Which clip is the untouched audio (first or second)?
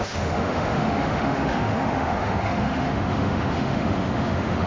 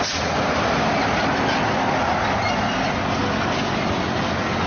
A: second